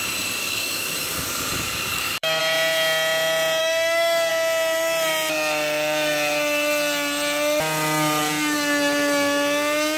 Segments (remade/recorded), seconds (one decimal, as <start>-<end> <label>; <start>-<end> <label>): 0.0-0.4 recorded; 0.4-2.4 remade; 2.4-3.6 recorded; 3.6-4.3 remade; 4.3-10.0 recorded